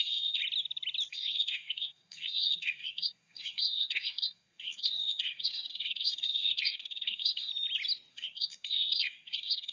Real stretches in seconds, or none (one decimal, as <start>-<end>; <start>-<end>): 0.4-1.1; 7.5-8.1